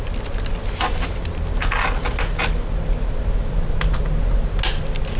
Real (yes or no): yes